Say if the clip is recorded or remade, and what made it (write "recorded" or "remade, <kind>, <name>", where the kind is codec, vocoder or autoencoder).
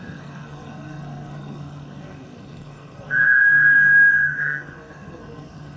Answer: remade, codec, SNAC